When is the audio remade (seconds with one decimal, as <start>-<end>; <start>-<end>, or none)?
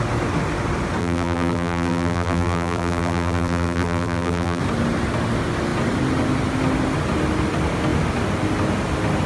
1.0-4.6